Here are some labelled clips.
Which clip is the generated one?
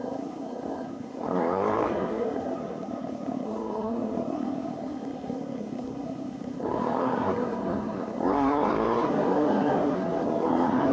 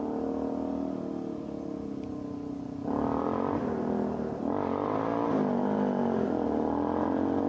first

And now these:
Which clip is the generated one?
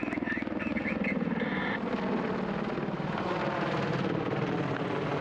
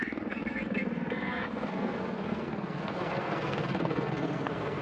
second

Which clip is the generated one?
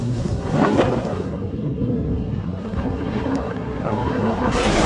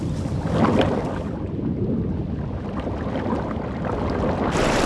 first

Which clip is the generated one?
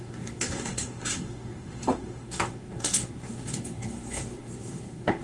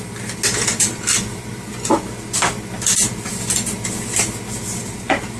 first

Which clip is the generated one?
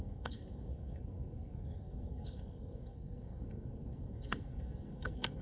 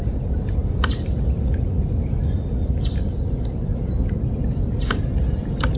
first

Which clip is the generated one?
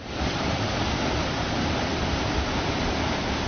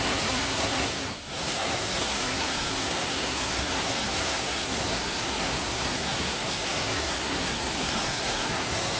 second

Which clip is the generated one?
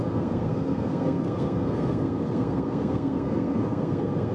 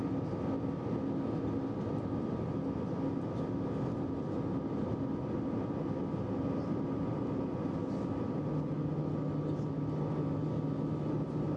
first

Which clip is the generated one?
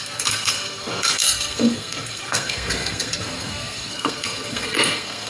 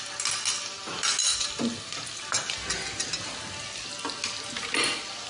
first